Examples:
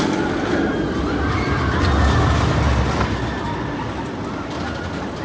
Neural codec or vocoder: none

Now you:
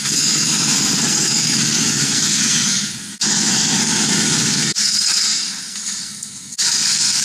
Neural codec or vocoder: codec, SNAC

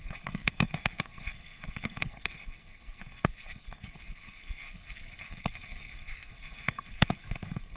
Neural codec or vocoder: codec, SNAC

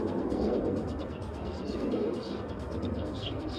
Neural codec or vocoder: codec, SNAC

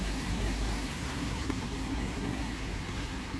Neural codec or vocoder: codec, SNAC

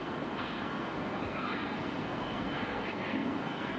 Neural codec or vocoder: codec, SNAC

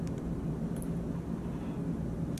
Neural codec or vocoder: none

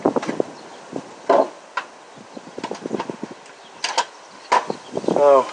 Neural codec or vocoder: none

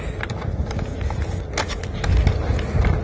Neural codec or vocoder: none